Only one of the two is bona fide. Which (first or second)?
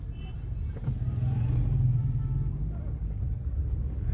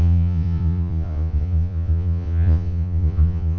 first